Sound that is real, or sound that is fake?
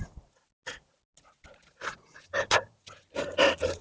real